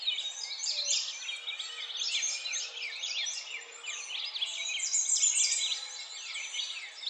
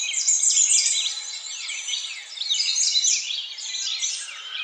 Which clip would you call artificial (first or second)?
second